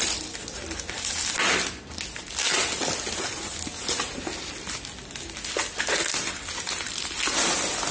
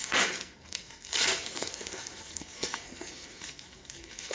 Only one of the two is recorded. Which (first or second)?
first